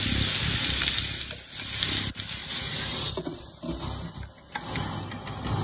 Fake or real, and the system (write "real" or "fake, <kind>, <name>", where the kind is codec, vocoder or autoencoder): real